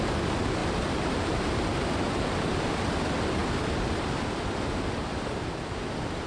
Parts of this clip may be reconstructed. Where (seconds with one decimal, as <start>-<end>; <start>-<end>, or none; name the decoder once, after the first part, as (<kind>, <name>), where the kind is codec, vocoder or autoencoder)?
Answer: 0.6-2.9 (vocoder, BigVGAN v2); 3.4-6.3